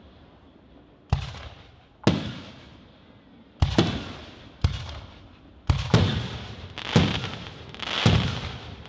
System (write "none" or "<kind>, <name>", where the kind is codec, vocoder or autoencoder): none